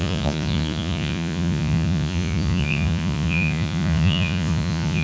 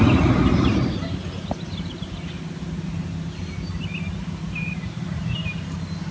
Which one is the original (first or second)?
second